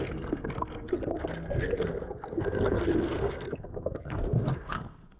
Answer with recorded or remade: remade